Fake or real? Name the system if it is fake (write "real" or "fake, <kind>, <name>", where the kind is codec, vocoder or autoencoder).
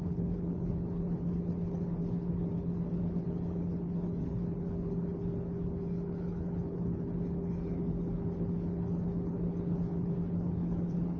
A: fake, codec, HILCodec